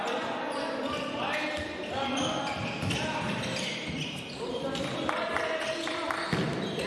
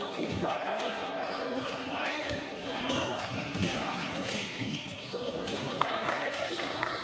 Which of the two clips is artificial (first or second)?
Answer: second